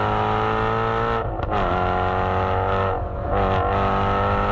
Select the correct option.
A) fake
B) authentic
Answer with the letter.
B